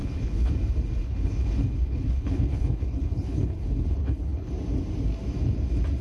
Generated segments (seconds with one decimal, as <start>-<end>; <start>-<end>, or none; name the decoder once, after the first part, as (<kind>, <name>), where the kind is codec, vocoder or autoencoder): 0.0-0.5 (codec, HILCodec); 1.0-4.5